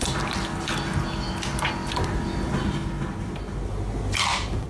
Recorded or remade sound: recorded